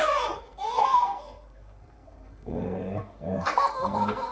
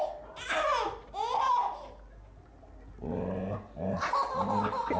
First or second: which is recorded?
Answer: second